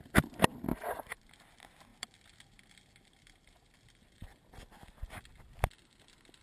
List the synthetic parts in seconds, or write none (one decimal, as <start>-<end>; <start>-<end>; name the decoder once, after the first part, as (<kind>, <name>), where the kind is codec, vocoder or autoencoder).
0.7-1.3 (vocoder, BigVGAN v2)